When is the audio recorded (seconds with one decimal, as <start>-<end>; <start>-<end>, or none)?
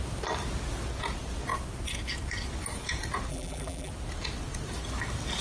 0.0-3.3; 3.9-5.4